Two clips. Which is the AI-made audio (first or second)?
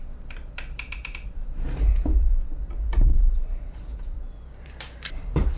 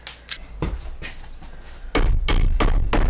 first